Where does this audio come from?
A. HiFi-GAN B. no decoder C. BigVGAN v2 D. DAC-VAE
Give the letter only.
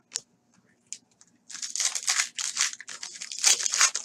B